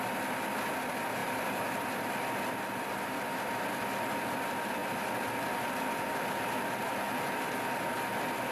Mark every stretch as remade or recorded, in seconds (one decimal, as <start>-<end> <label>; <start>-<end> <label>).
0.0-1.2 recorded; 1.2-2.3 remade; 2.3-8.5 recorded